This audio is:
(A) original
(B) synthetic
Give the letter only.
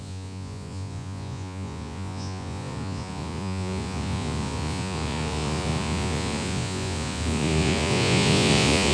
B